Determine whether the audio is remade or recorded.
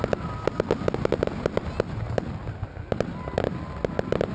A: recorded